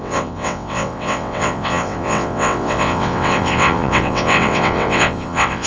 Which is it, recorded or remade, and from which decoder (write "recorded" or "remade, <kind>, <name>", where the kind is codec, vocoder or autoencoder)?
remade, vocoder, WaveNeXt